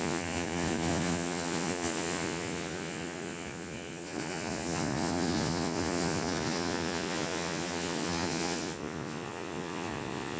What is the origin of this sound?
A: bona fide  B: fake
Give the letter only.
B